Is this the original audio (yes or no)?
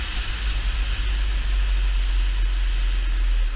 yes